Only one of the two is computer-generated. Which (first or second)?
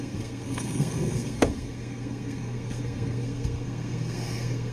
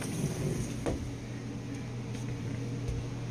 first